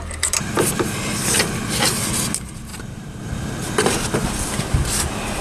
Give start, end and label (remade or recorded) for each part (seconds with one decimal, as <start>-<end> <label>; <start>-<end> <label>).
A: 0.0-2.7 recorded; 2.7-4.6 remade; 4.6-5.4 recorded